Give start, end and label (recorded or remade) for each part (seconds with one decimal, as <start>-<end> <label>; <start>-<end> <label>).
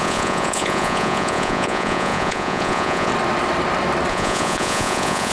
0.0-3.1 remade; 3.1-4.1 recorded; 4.1-5.3 remade